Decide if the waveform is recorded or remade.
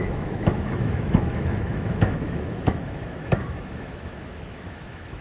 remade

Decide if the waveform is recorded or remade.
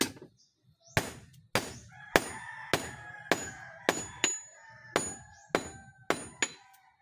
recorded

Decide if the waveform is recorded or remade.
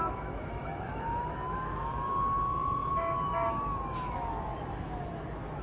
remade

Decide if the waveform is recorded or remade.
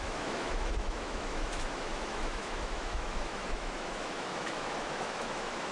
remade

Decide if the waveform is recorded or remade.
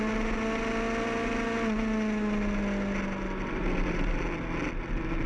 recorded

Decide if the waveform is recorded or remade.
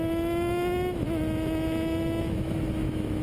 remade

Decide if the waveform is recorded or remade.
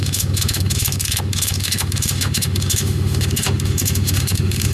remade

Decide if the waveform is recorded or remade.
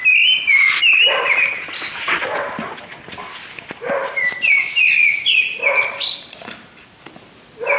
recorded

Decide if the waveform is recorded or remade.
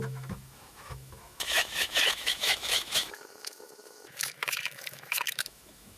remade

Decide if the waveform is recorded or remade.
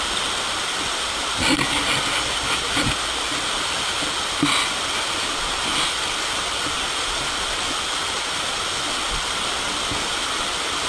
recorded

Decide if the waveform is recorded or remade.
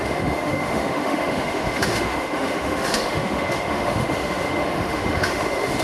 remade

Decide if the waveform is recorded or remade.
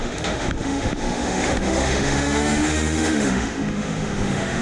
remade